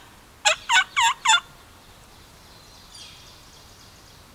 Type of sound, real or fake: real